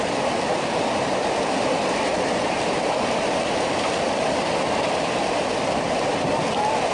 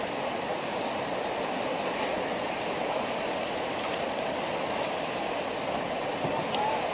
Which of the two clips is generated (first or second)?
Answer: first